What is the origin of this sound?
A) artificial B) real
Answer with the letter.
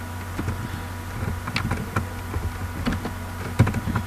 B